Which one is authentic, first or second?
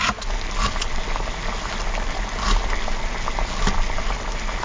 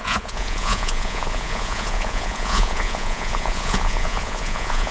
first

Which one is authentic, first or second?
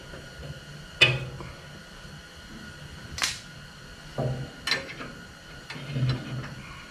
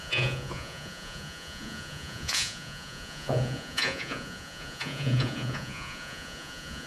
first